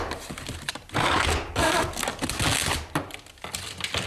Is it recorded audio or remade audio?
recorded